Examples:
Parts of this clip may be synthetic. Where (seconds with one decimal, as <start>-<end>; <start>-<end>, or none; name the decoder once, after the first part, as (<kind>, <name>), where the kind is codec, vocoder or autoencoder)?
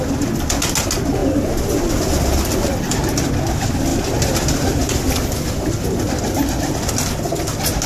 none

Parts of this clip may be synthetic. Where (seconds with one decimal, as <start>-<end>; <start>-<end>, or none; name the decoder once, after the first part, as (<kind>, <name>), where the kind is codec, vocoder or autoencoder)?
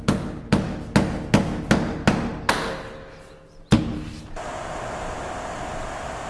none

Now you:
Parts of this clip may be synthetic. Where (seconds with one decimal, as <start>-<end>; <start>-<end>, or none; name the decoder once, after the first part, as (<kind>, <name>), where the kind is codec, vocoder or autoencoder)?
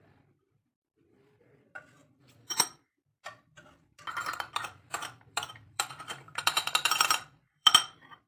0.0-8.3 (vocoder, BigVGAN v2)